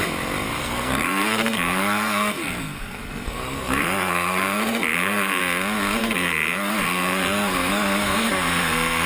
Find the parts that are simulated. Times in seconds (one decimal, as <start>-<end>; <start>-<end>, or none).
0.6-5.4; 6.0-9.1